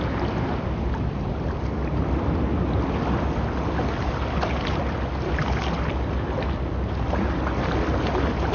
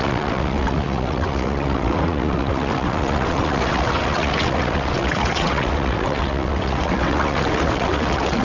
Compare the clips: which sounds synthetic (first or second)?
second